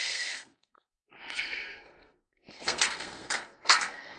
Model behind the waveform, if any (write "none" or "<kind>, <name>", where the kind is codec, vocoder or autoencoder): codec, SNAC